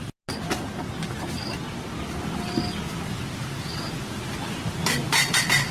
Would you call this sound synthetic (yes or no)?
no